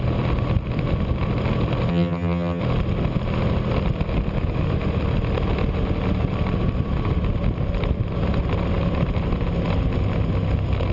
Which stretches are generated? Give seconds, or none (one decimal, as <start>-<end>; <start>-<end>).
1.9-2.6